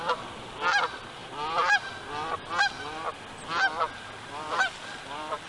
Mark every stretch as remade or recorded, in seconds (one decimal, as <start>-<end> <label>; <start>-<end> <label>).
0.0-5.5 recorded

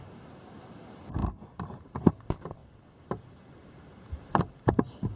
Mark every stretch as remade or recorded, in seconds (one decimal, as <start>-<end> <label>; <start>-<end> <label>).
0.0-2.6 recorded; 2.6-4.7 remade; 4.7-5.2 recorded

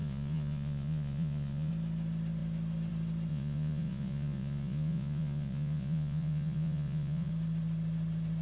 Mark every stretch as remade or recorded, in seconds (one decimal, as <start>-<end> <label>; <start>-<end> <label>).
0.0-1.7 remade; 1.7-3.3 recorded; 3.3-7.3 remade; 7.3-8.4 recorded

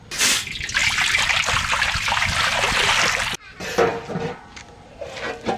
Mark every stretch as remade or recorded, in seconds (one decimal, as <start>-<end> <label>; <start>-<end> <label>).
0.0-3.9 recorded; 3.9-4.9 remade; 4.9-5.6 recorded

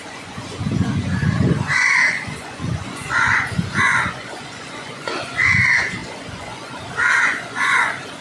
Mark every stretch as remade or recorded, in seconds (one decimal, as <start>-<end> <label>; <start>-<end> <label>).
0.0-8.2 remade

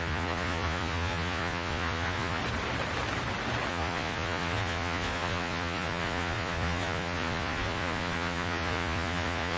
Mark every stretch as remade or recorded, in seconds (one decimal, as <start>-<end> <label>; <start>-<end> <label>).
0.0-2.4 remade; 2.4-3.7 recorded; 3.7-9.6 remade

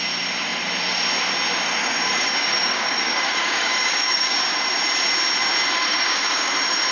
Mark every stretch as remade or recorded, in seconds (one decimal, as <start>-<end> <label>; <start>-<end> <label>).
0.0-1.8 recorded; 1.8-4.3 remade; 4.3-5.9 recorded; 5.9-6.5 remade; 6.5-6.9 recorded

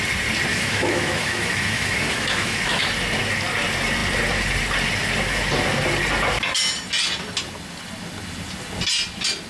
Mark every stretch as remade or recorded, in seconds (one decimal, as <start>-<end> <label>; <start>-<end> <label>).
0.0-0.5 recorded; 0.5-2.8 remade; 2.8-9.5 recorded